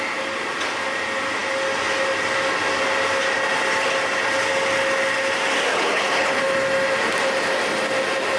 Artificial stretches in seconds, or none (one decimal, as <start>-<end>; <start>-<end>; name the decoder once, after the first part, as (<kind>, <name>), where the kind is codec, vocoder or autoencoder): 5.7-6.4 (codec, HILCodec)